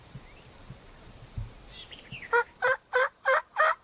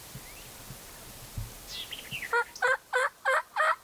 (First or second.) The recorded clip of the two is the second